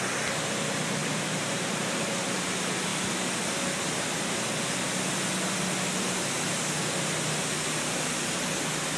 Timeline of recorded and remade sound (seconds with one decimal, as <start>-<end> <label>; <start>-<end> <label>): 0.0-1.0 recorded; 1.0-1.7 remade; 1.7-9.0 recorded